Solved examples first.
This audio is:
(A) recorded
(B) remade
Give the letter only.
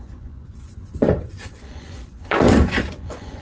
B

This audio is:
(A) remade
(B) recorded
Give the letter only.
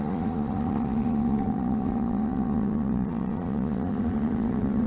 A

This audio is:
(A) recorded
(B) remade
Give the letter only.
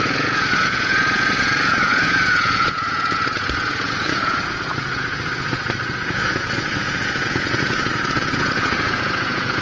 B